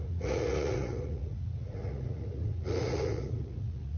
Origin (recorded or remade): remade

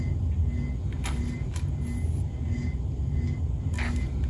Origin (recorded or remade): recorded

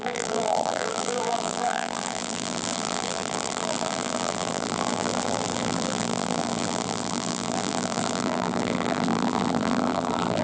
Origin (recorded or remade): remade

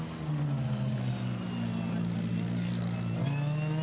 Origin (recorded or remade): recorded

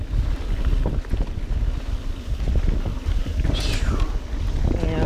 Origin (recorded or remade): recorded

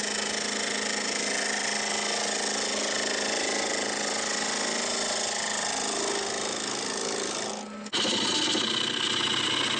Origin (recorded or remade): recorded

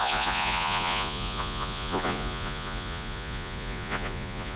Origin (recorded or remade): remade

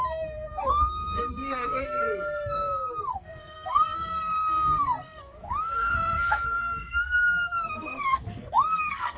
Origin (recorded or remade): remade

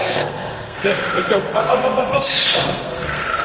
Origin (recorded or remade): remade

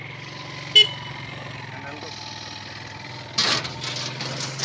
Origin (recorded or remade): recorded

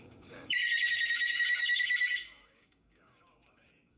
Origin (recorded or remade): remade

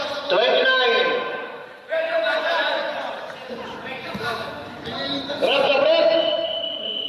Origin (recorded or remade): remade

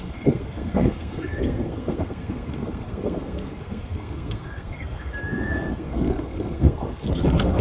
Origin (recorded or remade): remade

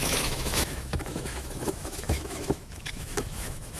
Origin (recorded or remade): remade